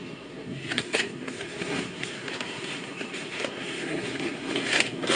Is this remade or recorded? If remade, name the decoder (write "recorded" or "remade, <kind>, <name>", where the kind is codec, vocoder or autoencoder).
remade, codec, SNAC